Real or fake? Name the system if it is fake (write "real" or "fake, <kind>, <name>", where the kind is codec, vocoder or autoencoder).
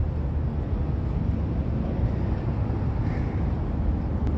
real